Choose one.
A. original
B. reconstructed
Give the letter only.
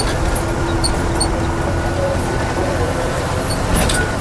A